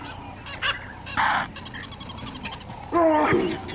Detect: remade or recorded recorded